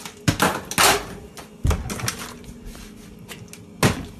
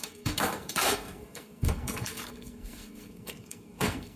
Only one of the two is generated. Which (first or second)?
second